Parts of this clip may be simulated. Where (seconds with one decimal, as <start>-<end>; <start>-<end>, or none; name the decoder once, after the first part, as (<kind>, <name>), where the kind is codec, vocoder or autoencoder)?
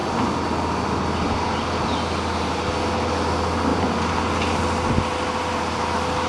none